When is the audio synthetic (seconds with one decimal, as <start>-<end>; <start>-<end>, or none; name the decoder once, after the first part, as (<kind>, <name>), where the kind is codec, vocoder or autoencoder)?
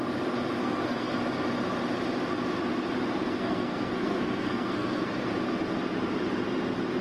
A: 0.6-1.1 (codec, SNAC); 3.2-5.3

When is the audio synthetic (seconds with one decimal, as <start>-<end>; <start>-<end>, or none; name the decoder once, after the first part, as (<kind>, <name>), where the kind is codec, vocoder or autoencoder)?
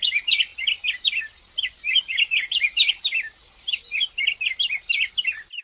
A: none